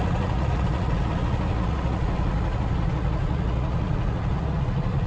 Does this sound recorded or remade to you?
remade